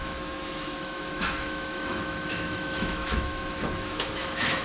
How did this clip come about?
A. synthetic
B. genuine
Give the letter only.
A